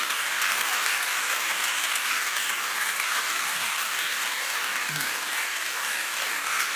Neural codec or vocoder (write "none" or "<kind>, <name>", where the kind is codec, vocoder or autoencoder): codec, DAC